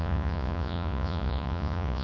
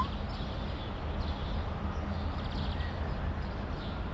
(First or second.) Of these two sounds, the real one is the second